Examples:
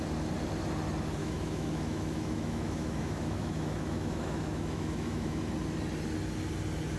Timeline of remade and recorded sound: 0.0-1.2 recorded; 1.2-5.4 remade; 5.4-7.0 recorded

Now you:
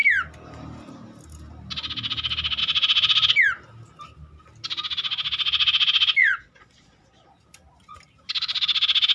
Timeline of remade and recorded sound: 0.0-6.2 recorded; 6.2-7.3 remade; 7.3-9.1 recorded

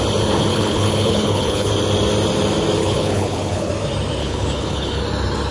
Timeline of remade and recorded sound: 0.0-0.5 recorded; 0.5-1.7 remade; 1.7-2.8 recorded; 2.8-3.7 remade; 3.7-4.2 recorded; 4.2-5.0 remade; 5.0-5.5 recorded